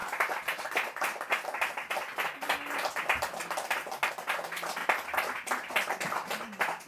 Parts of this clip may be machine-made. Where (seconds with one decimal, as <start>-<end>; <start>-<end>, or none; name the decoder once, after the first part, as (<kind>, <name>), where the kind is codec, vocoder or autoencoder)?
none